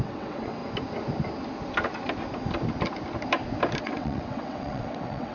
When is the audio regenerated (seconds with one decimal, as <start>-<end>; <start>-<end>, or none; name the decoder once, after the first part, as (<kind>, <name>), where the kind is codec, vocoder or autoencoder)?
0.0-0.6 (vocoder, WaveNeXt); 3.8-5.3